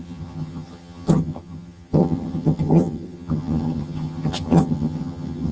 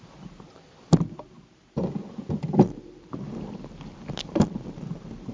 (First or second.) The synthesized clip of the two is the first